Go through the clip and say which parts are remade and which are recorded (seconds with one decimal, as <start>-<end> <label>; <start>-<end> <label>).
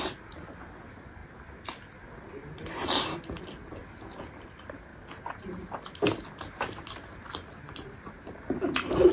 0.0-9.1 recorded